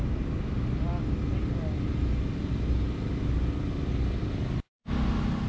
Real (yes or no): yes